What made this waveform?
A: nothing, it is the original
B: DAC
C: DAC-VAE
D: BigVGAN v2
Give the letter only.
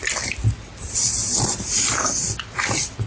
A